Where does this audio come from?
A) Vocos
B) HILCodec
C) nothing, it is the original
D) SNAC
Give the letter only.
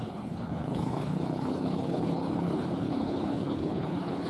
B